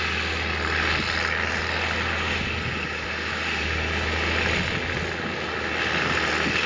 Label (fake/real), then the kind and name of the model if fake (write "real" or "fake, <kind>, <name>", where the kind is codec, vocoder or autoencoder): real